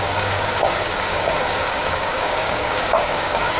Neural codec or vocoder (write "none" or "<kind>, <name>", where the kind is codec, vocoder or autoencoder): codec, DAC